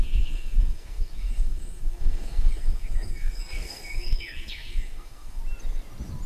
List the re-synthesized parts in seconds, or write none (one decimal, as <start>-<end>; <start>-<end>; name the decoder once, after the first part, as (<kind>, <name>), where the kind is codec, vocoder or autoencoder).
0.0-5.4 (codec, SNAC)